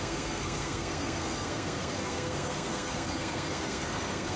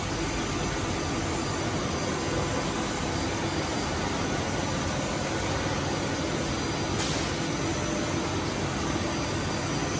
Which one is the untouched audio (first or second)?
second